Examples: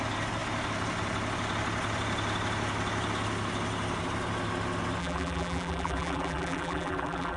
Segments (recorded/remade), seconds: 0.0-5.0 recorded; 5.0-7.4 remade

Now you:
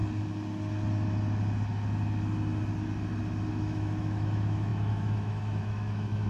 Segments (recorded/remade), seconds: 0.0-3.5 recorded; 3.5-6.3 remade

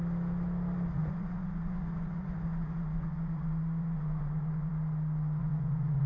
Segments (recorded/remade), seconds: 0.0-1.0 recorded; 1.0-4.7 remade; 4.7-5.4 recorded; 5.4-6.1 remade